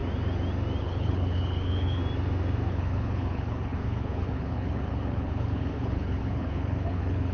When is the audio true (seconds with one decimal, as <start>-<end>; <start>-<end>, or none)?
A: 0.0-0.8; 2.0-2.7